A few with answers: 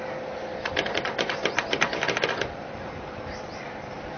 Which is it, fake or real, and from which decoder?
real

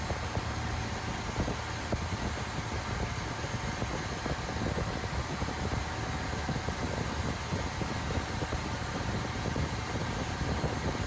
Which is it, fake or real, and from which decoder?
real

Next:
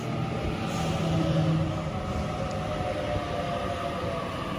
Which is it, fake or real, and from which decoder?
real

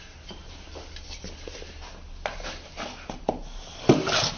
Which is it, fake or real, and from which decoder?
real